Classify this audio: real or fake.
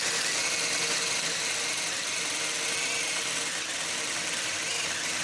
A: real